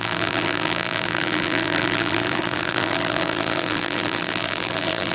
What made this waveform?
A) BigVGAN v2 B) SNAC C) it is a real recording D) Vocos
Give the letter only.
A